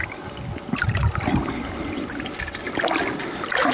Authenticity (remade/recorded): recorded